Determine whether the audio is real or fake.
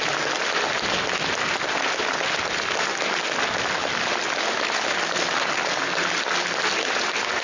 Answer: real